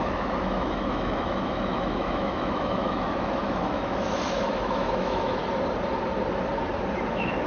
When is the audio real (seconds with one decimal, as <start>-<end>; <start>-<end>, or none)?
5.4-7.1